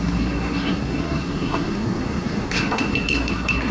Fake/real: fake